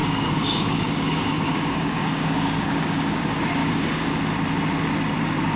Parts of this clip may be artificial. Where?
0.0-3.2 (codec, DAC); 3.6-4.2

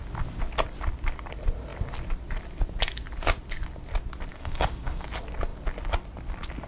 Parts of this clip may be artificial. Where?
4.3-5.0 (codec, DAC)

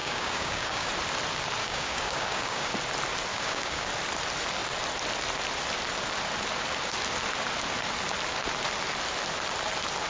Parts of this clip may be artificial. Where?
0.0-0.9 (codec, DAC); 1.6-2.7; 3.3-3.9